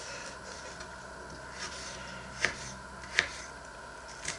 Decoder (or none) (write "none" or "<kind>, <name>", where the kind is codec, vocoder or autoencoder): none